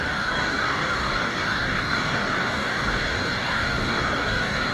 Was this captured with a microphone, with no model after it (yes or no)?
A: no